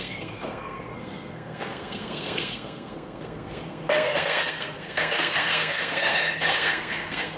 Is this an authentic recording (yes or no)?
no